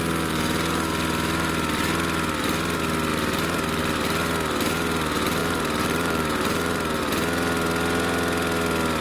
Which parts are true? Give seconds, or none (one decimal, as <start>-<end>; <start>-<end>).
0.0-3.1; 3.8-5.4; 7.0-9.0